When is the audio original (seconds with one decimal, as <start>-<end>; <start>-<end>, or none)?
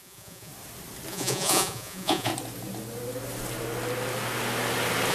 0.5-1.1; 2.3-5.1